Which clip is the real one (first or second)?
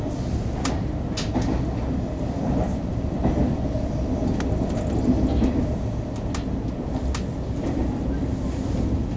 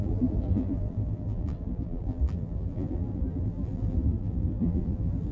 first